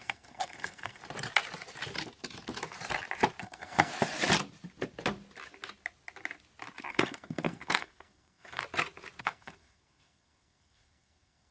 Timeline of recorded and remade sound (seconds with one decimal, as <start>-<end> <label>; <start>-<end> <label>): 0.0-1.0 remade; 1.0-3.4 recorded; 3.4-3.9 remade; 3.9-6.9 recorded; 6.9-8.6 remade; 8.6-9.2 recorded; 9.2-11.5 remade